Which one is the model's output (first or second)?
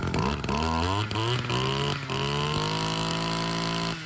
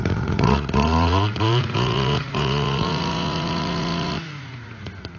second